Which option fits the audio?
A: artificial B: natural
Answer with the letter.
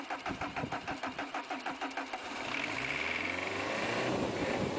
A